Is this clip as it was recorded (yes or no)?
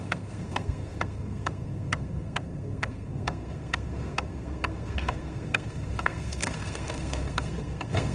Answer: no